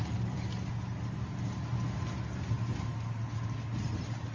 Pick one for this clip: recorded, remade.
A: recorded